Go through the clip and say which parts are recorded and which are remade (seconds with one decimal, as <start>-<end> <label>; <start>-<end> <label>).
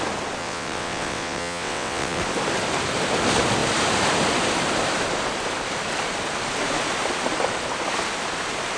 0.0-0.4 recorded; 0.4-2.2 remade; 2.2-8.8 recorded